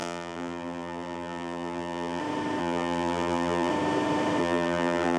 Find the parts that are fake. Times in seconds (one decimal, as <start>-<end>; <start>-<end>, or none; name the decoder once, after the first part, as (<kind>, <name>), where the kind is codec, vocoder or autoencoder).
0.0-2.2 (vocoder, BigVGAN v2); 2.6-3.7; 4.4-5.2